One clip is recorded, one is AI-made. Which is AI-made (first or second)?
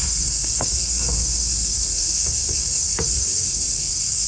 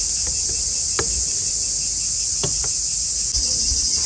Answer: first